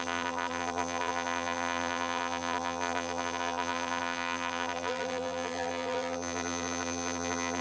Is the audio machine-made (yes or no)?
yes